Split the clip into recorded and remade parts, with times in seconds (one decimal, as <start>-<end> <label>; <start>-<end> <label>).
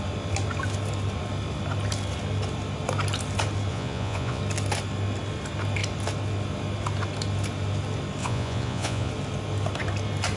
0.0-3.7 recorded; 3.7-4.4 remade; 4.4-8.2 recorded; 8.2-9.1 remade; 9.1-10.4 recorded